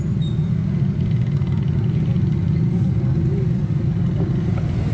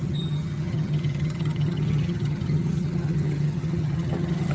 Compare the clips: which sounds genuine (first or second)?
first